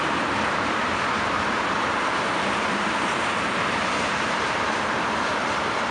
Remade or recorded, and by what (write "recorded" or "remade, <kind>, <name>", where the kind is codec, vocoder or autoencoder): remade, vocoder, BigVGAN v2